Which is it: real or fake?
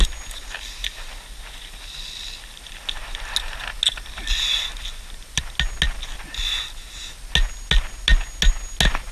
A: real